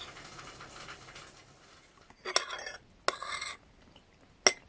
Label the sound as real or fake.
real